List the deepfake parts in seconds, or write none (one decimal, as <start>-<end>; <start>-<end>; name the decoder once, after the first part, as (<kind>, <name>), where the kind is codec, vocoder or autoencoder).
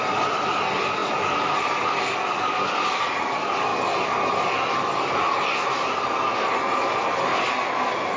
none